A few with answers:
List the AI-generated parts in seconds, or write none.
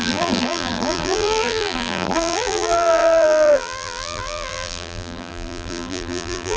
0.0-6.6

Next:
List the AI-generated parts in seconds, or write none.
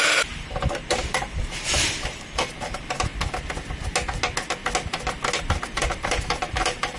0.0-3.1; 5.4-7.0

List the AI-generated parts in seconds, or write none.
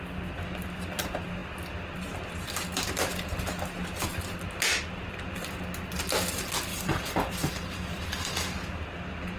6.7-8.5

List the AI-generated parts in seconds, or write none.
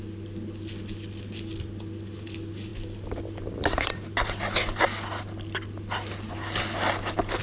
none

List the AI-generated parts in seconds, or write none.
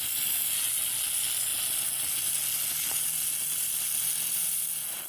none